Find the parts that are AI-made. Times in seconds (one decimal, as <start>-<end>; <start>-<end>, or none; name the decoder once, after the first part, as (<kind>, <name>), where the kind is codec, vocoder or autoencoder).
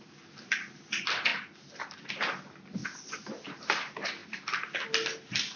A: none